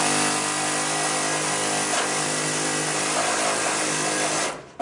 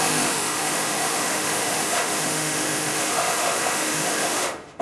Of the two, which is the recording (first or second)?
first